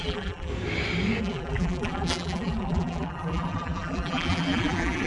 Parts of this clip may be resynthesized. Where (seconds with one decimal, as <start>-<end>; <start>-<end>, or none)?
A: 0.0-0.5; 1.2-5.1